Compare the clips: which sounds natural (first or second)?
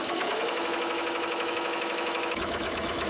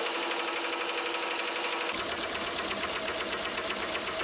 second